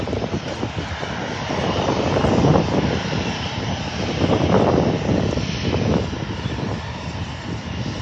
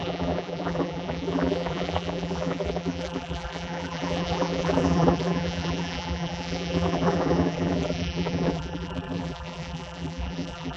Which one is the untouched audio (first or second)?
first